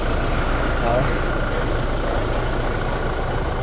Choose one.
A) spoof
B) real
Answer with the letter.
B